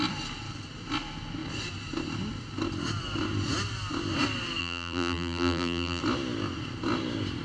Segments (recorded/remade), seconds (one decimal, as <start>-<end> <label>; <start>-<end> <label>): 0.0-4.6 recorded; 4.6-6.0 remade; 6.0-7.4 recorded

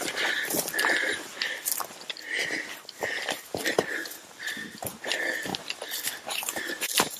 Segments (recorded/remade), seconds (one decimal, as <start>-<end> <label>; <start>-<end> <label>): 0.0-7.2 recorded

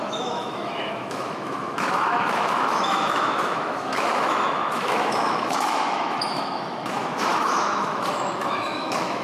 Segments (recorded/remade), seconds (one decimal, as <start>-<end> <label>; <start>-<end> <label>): 0.0-9.2 remade

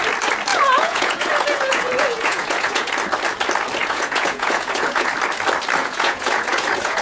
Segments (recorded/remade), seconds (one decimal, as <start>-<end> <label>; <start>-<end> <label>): 0.0-0.5 recorded; 0.5-2.9 remade; 2.9-3.8 recorded; 3.8-5.1 remade; 5.1-5.8 recorded; 5.8-7.0 remade

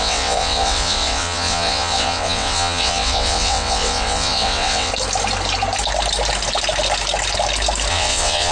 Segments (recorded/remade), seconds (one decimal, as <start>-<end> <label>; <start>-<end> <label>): 0.0-4.9 remade; 4.9-7.9 recorded; 7.9-8.5 remade

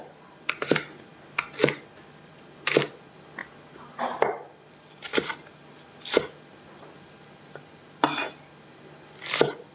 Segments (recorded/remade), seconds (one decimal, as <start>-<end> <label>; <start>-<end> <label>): 0.0-1.1 remade; 1.1-2.9 recorded; 2.9-3.4 remade; 3.4-4.2 recorded; 4.2-9.7 remade